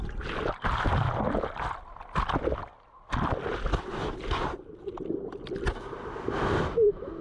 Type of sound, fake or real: real